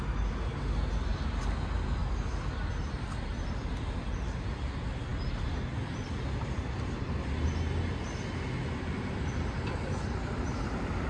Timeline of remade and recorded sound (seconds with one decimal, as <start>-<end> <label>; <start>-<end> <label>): 0.0-11.1 recorded